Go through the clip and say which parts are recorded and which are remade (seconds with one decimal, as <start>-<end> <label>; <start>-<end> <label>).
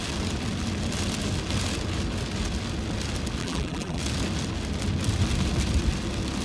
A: 0.0-3.4 recorded; 3.4-4.0 remade; 4.0-6.4 recorded